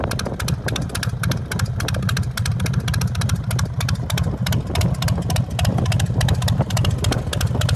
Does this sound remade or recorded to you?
recorded